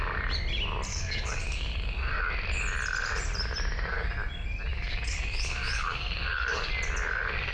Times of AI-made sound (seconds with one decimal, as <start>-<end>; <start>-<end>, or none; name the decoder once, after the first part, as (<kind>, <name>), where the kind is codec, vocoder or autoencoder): 0.9-2.2 (codec, DAC); 4.7-6.7